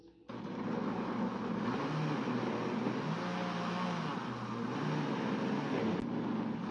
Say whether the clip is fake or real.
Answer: real